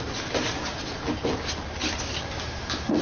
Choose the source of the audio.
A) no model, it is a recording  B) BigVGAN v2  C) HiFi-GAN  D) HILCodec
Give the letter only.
A